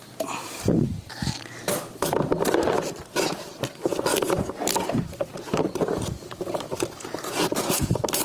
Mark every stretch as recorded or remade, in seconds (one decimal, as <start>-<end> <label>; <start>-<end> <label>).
0.0-8.2 remade